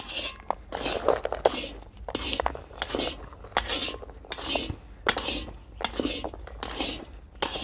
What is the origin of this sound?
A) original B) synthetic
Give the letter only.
A